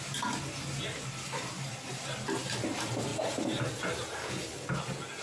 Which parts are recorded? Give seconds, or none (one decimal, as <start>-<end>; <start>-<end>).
0.0-4.2; 4.8-5.2